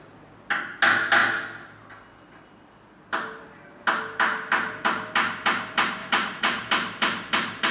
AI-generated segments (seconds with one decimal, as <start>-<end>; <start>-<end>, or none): 6.0-6.7